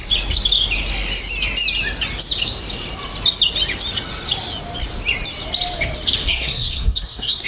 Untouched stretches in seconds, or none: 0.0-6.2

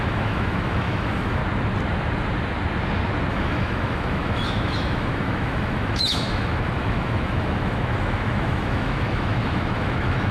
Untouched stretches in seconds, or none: 1.4-3.3

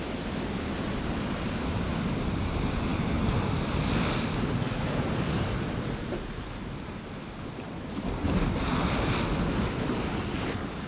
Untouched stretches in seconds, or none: 0.0-10.9

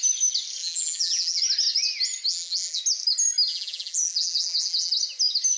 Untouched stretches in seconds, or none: 0.0-0.6; 1.4-2.3; 2.8-3.5; 4.9-5.6

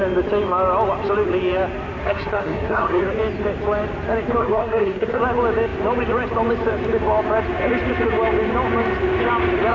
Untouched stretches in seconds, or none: 0.0-2.0; 3.0-4.4; 5.2-9.7

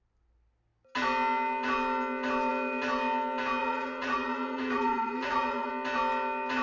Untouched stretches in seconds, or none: 0.0-3.6; 5.7-6.6

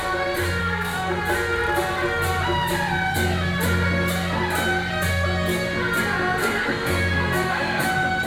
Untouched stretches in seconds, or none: 0.0-0.6; 1.2-6.4; 7.9-8.3